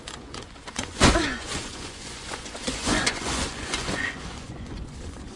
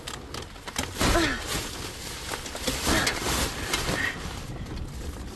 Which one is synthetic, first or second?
first